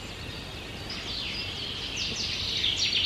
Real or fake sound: real